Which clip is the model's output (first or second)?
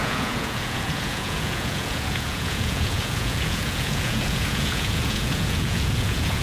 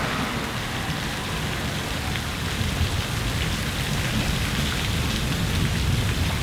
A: first